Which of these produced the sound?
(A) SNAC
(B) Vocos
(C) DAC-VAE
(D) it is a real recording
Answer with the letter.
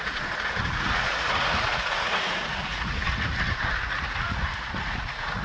B